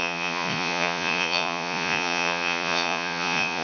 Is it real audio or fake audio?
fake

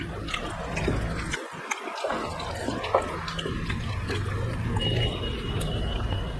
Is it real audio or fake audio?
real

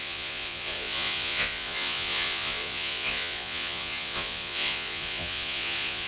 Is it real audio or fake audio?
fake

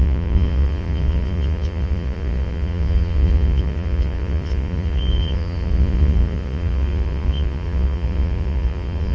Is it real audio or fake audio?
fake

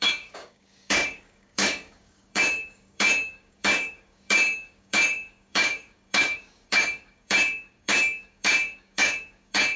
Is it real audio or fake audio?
fake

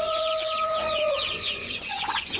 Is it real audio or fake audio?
fake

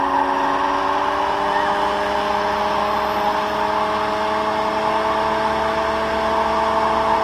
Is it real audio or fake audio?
real